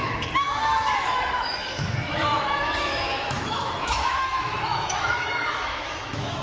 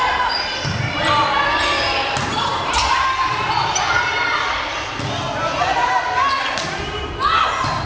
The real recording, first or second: second